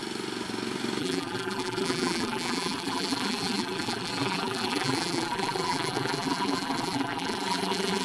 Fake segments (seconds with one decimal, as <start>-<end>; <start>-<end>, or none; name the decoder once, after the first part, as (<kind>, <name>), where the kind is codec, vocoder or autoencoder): 1.0-8.0 (vocoder, BigVGAN v2)